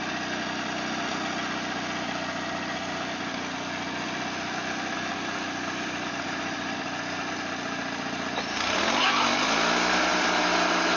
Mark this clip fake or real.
real